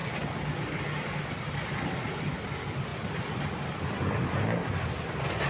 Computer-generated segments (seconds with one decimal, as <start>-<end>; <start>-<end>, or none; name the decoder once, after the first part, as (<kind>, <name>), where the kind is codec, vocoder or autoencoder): none